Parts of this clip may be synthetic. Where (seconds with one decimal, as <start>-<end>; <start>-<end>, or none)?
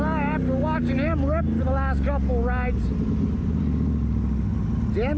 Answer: none